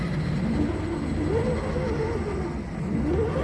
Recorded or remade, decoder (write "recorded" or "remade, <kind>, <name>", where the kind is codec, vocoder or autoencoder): recorded